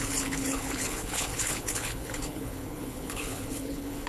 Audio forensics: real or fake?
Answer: fake